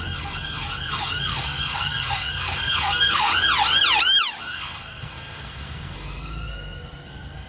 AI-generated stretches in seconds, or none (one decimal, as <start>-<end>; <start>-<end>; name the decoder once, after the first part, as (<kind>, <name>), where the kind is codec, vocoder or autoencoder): 0.0-3.3 (codec, SNAC); 4.4-7.5